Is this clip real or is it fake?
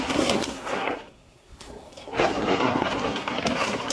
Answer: fake